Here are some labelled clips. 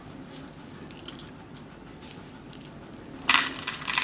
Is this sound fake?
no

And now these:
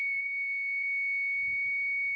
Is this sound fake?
no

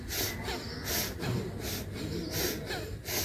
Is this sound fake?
no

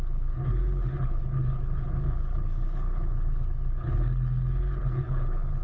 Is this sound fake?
yes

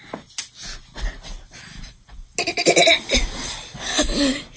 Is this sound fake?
no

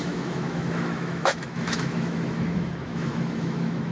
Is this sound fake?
yes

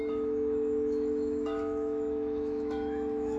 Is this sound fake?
yes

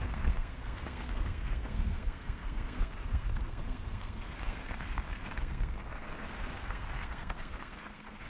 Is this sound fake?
yes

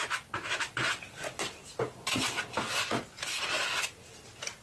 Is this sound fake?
no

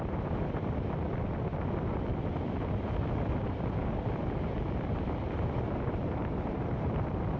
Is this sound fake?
no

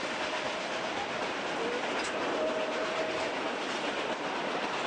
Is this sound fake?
no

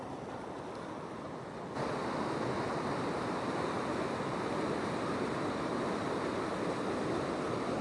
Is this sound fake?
no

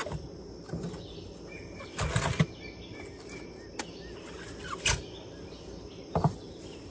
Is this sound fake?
no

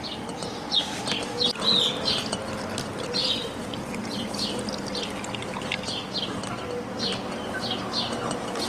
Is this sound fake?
no